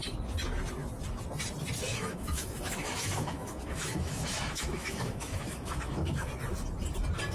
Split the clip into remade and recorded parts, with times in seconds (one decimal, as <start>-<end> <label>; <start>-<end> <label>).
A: 0.0-1.9 recorded; 1.9-6.3 remade; 6.3-7.3 recorded